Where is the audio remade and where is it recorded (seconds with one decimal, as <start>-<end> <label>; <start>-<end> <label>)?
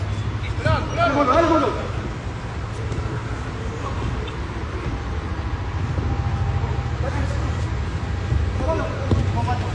0.0-9.7 recorded